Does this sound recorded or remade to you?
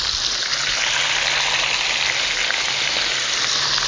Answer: recorded